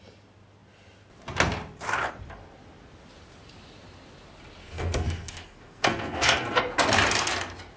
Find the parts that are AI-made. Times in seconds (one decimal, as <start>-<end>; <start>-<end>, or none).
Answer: 4.6-6.6